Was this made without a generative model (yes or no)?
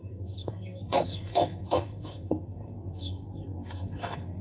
no